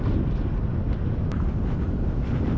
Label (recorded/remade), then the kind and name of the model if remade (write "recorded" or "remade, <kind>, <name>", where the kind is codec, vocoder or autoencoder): recorded